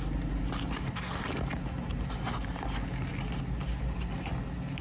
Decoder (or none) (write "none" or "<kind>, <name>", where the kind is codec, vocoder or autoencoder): none